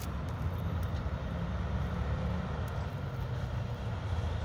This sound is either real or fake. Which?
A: real